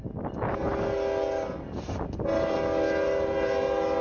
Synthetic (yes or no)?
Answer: no